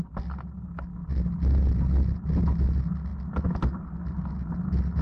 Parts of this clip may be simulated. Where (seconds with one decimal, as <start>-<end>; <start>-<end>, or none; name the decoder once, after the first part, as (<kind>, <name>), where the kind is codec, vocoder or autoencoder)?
none